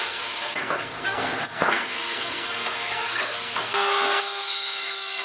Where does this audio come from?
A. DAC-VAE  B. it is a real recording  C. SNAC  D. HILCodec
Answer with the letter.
C